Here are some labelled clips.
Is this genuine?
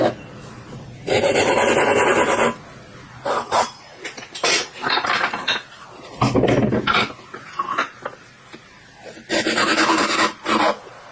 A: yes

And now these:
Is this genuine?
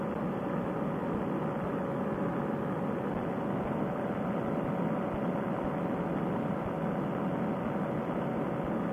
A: yes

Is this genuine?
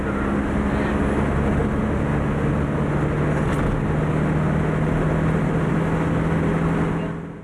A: yes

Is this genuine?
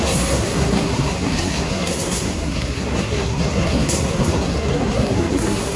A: no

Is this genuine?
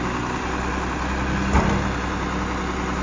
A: yes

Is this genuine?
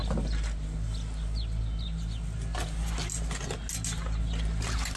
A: yes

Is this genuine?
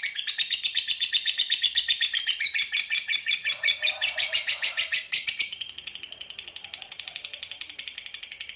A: no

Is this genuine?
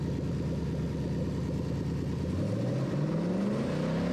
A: yes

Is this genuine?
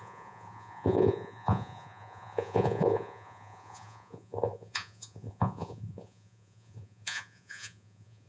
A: no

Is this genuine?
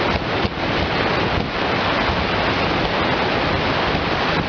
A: yes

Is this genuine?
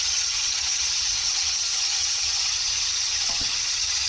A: no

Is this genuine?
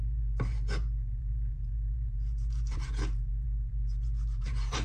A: no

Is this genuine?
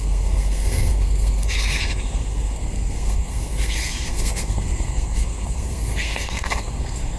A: no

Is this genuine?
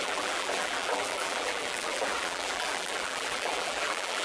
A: no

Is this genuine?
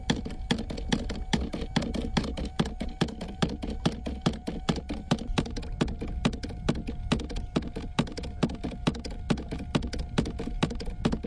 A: yes